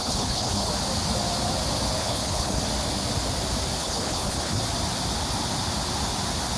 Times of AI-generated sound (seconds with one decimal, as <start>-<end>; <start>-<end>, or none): 0.0-0.7; 2.0-2.6; 3.8-4.6